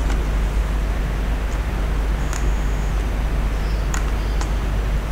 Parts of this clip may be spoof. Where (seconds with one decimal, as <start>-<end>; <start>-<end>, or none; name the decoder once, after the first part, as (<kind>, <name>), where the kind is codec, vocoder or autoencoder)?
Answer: 2.2-2.9 (autoencoder, DAC-VAE)